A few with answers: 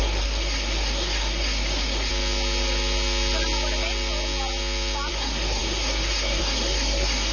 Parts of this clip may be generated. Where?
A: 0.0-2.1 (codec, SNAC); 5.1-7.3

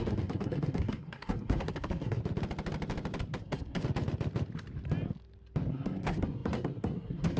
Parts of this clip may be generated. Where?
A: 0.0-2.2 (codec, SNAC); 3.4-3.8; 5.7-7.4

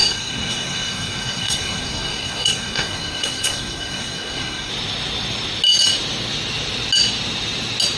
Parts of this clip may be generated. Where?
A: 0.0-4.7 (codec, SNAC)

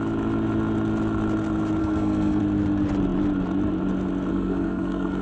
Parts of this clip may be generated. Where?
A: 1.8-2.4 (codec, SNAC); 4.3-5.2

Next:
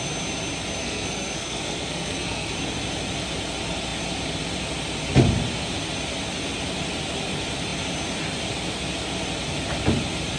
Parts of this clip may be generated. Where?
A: 0.8-2.5 (codec, SNAC)

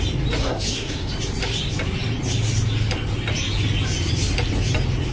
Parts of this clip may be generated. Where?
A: 0.4-1.1 (codec, SNAC)

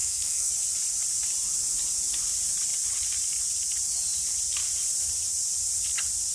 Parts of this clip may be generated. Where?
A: 0.0-0.5 (codec, SNAC)

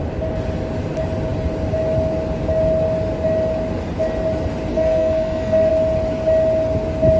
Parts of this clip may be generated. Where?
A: 4.7-5.7 (codec, SNAC)